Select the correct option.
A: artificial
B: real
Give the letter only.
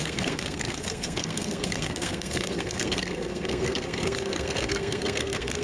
A